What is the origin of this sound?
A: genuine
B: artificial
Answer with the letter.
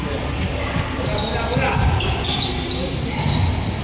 A